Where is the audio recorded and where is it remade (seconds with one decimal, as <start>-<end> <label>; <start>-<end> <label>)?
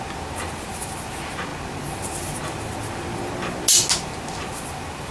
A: 0.0-5.1 recorded